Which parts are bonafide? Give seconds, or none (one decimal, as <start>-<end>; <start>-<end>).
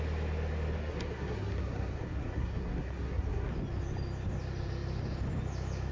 0.0-0.8; 3.5-5.9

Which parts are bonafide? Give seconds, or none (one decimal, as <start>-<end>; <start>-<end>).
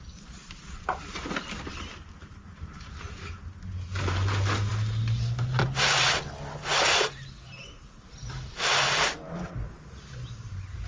0.0-0.4; 3.4-10.9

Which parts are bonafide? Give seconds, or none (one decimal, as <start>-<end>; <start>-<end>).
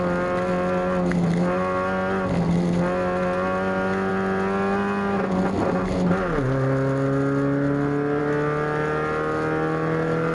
0.0-10.3